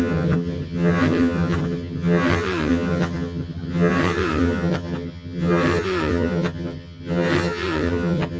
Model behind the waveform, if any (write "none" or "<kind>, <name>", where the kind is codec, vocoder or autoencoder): vocoder, HiFi-GAN